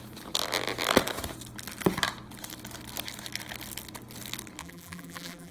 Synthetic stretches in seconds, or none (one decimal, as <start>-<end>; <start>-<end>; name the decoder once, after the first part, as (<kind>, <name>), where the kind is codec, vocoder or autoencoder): 4.6-5.5 (vocoder, BigVGAN v2)